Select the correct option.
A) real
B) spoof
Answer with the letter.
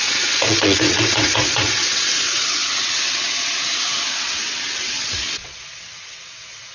B